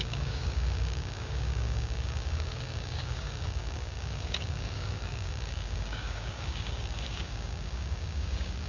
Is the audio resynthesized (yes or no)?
yes